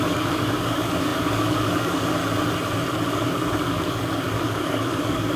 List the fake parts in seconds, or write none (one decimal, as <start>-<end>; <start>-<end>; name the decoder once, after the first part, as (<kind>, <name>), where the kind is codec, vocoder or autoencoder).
0.0-2.2 (codec, DAC); 3.1-5.4